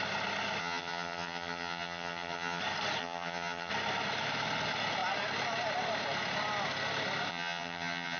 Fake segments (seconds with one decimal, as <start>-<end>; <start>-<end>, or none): 0.6-2.6; 3.0-3.7; 7.3-8.2